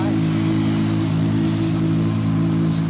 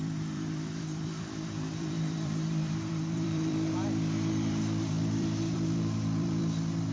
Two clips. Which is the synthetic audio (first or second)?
second